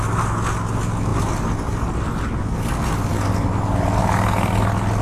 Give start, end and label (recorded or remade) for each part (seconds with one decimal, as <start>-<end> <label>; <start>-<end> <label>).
0.0-5.0 recorded